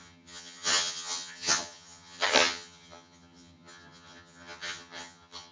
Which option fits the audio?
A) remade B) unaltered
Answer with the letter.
A